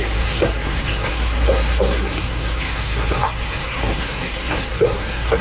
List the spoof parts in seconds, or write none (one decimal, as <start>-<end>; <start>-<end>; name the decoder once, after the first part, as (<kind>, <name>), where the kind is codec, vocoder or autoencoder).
0.0-5.4 (codec, SNAC)